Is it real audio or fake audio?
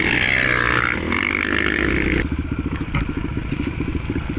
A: real